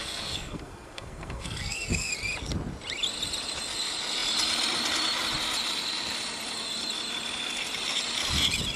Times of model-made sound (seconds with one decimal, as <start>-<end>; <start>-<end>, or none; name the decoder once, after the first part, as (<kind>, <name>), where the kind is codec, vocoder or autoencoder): 0.0-2.1 (codec, SNAC)